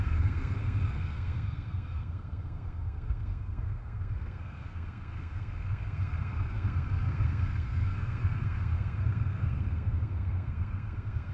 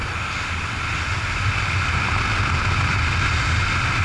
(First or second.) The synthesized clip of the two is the first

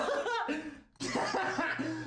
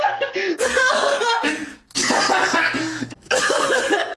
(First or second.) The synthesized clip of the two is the second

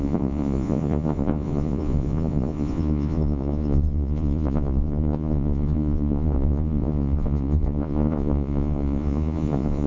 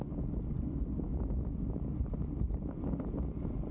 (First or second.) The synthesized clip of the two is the first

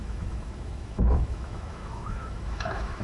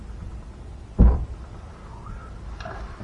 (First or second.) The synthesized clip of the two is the first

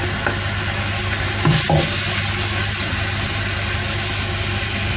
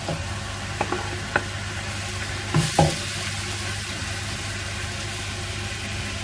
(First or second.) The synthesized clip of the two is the second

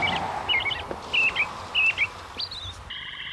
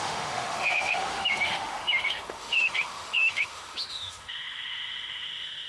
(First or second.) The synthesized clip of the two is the second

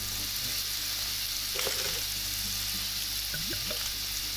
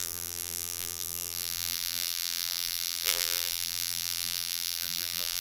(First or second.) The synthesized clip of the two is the second